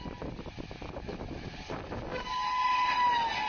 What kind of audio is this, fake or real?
real